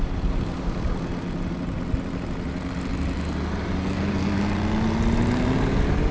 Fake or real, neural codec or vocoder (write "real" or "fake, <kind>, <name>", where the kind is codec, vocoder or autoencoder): real